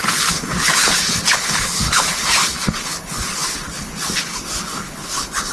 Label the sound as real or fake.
fake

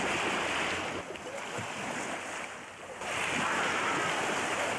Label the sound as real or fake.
real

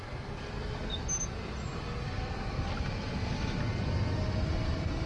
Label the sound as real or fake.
real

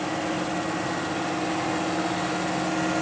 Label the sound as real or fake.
real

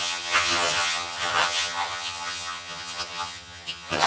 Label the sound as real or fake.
fake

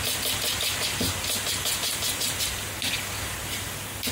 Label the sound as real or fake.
real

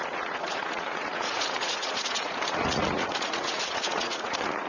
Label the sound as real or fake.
fake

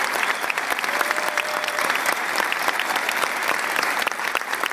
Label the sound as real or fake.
fake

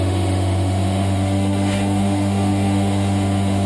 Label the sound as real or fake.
fake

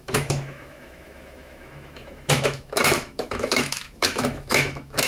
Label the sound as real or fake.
fake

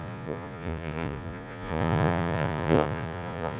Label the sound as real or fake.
fake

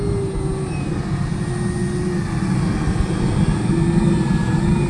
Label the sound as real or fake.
real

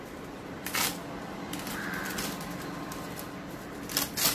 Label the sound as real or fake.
real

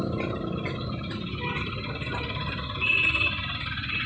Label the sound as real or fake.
real